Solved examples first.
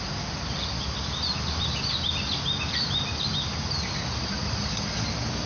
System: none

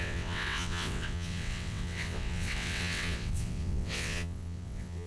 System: vocoder, WaveNeXt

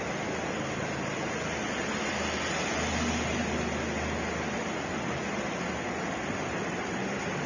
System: none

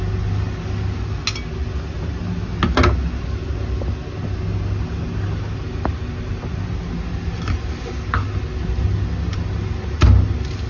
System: none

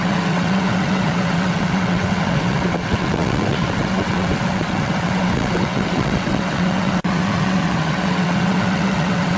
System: vocoder, WaveNeXt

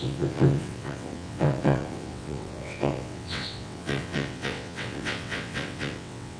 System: vocoder, WaveNeXt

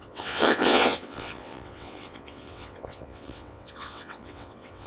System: vocoder, WaveNeXt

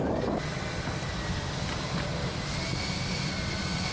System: none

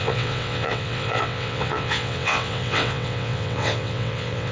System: vocoder, WaveNeXt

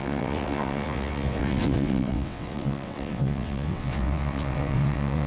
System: vocoder, WaveNeXt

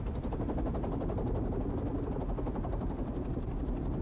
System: none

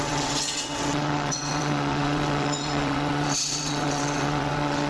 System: vocoder, WaveNeXt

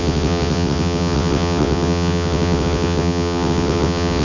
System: vocoder, WaveNeXt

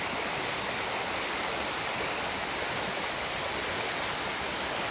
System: none